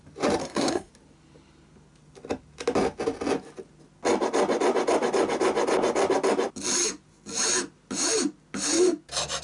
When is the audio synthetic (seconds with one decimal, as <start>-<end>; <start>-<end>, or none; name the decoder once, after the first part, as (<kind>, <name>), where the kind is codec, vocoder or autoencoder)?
0.4-0.9 (codec, SNAC)